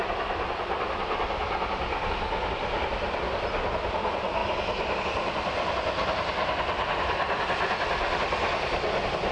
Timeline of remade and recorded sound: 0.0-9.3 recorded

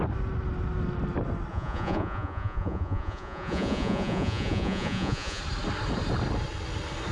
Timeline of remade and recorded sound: 0.0-1.5 recorded; 1.5-5.4 remade; 5.4-7.1 recorded

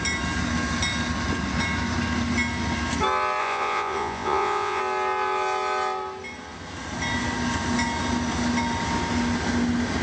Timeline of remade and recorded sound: 0.0-3.4 recorded; 3.4-4.8 remade; 4.8-10.0 recorded

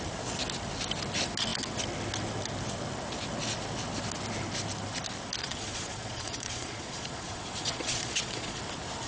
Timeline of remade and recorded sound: 0.0-5.4 recorded; 5.4-8.6 remade; 8.6-9.1 recorded

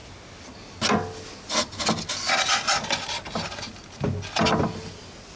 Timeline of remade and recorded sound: 0.0-5.4 recorded

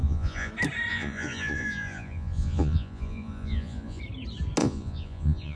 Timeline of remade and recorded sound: 0.0-0.5 remade; 0.5-0.9 recorded; 0.9-4.0 remade; 4.0-4.6 recorded; 4.6-5.6 remade

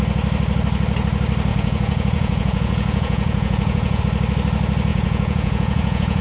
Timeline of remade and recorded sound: 0.0-1.5 recorded; 1.5-4.0 remade; 4.0-4.9 recorded; 4.9-6.2 remade